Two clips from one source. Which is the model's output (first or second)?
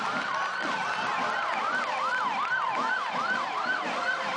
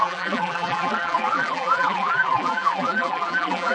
second